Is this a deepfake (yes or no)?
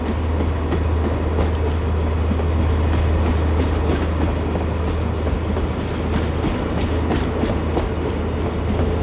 no